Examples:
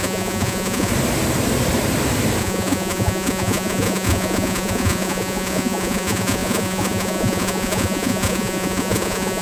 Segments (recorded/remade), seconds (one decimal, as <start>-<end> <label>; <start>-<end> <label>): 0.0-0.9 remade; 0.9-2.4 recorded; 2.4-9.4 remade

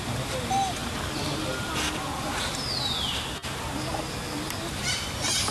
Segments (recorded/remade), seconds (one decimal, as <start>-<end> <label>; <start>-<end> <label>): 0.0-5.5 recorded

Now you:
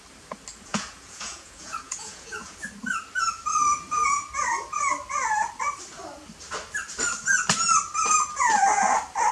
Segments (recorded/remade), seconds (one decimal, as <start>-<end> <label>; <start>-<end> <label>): 0.0-0.7 recorded; 0.7-2.6 remade; 2.6-9.3 recorded

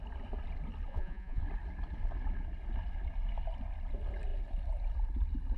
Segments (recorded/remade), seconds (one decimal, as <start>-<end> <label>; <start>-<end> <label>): 0.0-0.9 recorded; 0.9-1.4 remade; 1.4-5.6 recorded

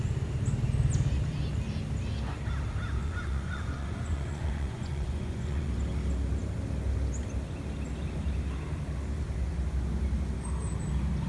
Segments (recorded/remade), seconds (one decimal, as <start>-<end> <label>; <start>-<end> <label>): 0.0-3.0 recorded; 3.0-5.7 remade; 5.7-11.3 recorded

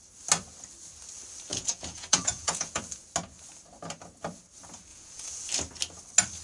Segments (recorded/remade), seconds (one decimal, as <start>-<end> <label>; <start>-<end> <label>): 0.0-1.5 recorded; 1.5-2.8 remade; 2.8-4.9 recorded; 4.9-5.5 remade; 5.5-6.4 recorded